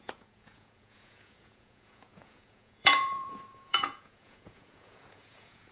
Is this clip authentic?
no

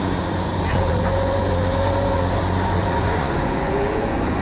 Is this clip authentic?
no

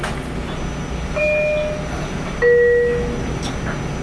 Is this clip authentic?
yes